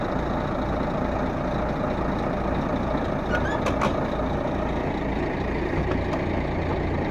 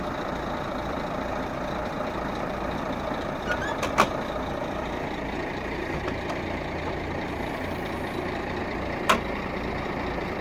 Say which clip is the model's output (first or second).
second